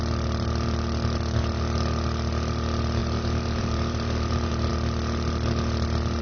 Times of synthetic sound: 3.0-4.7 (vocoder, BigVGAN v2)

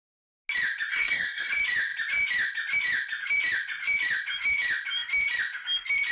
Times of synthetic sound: 0.9-1.5 (codec, SNAC)

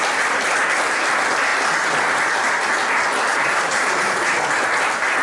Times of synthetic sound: 3.3-4.3 (vocoder, BigVGAN v2)

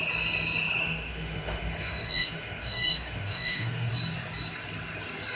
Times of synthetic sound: 0.8-3.9 (autoencoder, DAC-VAE)

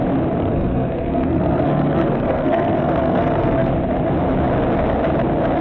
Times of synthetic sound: 0.4-3.7 (codec, SNAC)

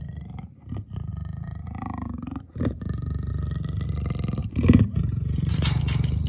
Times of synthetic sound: 1.1-3.3 (vocoder, BigVGAN v2); 4.4-5.8